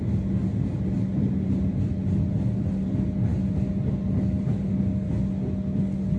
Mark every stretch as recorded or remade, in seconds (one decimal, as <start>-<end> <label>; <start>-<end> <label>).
0.0-6.2 recorded